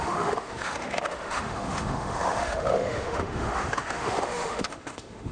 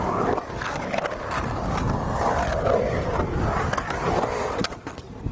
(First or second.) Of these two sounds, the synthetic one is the first